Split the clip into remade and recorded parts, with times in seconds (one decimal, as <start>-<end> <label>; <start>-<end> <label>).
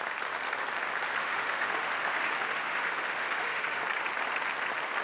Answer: 0.0-1.2 recorded; 1.2-3.8 remade; 3.8-5.0 recorded